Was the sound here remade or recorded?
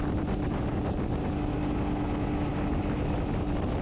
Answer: recorded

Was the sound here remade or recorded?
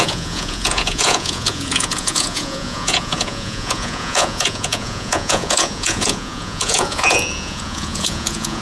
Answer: remade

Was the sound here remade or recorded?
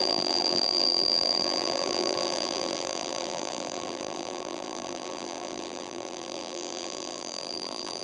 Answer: remade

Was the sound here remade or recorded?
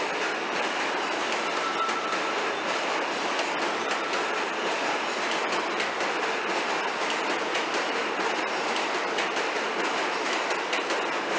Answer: recorded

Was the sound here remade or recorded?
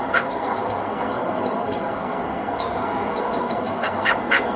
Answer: remade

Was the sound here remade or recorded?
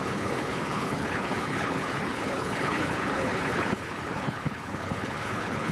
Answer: remade